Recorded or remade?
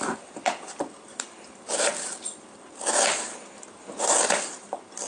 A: remade